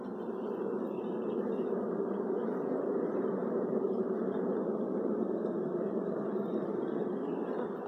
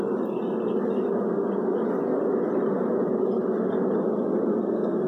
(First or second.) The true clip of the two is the second